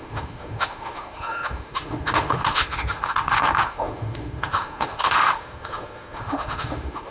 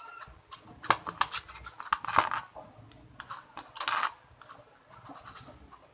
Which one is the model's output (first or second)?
first